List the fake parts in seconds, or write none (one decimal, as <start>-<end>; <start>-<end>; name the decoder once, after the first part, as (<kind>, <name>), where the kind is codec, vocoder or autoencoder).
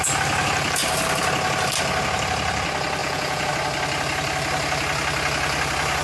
3.0-3.5 (vocoder, Vocos)